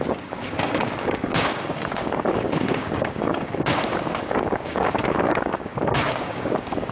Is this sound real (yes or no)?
no